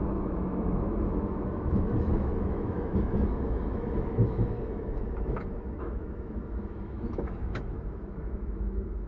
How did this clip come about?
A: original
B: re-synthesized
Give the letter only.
B